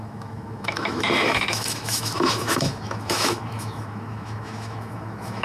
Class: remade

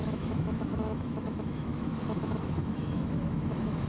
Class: remade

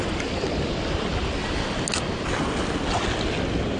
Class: recorded